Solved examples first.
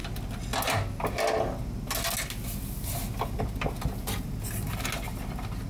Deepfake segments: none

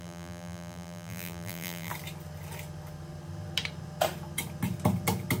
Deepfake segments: 0.0-1.9 (vocoder, BigVGAN v2)

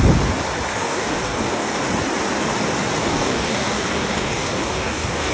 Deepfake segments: 0.7-1.8 (codec, DAC); 3.0-5.3